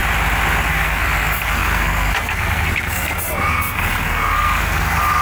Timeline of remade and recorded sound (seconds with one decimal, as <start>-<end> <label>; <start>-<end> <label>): 0.0-0.7 recorded; 0.7-5.2 remade